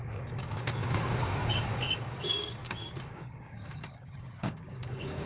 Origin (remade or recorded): remade